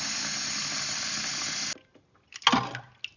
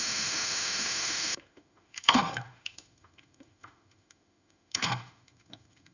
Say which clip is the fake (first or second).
second